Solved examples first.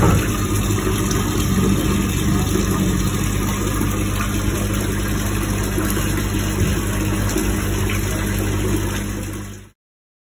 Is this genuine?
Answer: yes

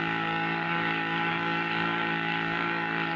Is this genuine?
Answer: no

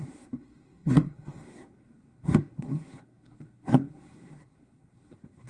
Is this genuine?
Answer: no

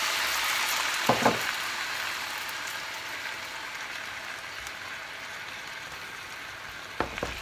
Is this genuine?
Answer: yes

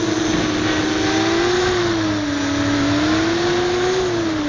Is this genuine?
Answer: yes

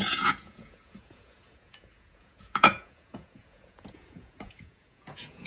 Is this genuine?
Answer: no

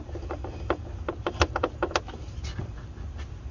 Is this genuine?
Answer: yes